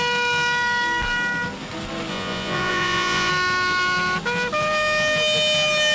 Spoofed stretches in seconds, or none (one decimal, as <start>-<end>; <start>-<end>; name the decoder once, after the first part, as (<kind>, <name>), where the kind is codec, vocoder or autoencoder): 2.1-3.3 (vocoder, Vocos)